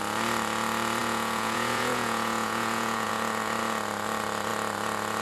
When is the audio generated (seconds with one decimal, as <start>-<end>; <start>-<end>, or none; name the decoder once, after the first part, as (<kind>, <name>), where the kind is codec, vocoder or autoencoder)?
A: 1.0-3.1 (vocoder, Vocos)